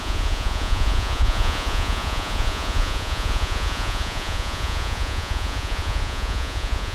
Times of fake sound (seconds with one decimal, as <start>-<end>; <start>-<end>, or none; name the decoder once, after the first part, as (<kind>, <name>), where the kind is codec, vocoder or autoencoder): 0.0-6.9 (vocoder, Vocos)